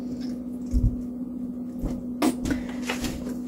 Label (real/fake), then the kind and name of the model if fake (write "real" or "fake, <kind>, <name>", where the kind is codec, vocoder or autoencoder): real